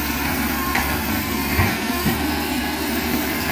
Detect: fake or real fake